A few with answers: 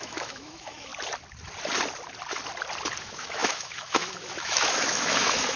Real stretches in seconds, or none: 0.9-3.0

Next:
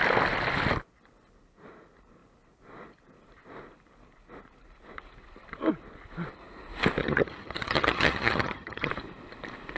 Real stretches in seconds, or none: 0.0-7.0; 8.9-9.8

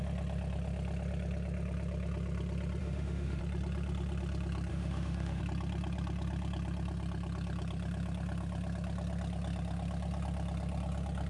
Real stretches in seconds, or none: 0.0-2.8; 3.4-4.7; 5.4-11.3